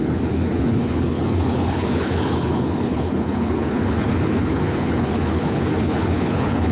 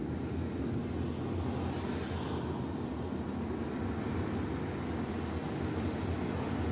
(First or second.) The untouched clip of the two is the second